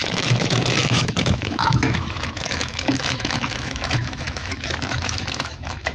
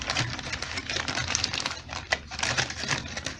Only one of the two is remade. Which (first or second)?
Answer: first